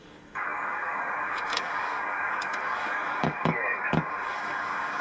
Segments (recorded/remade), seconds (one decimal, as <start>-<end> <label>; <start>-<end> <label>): 0.0-5.0 remade